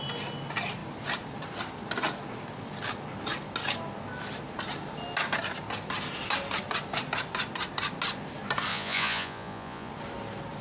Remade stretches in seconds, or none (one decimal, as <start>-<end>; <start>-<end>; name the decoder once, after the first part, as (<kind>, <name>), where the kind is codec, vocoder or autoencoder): 8.7-9.9 (vocoder, Vocos)